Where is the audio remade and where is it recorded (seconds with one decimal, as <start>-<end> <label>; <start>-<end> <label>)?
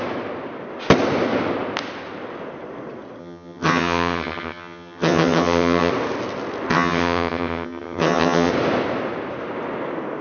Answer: 0.0-3.2 recorded; 3.2-5.9 remade; 5.9-6.7 recorded; 6.7-8.5 remade; 8.5-10.2 recorded